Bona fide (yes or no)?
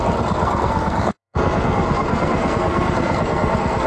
no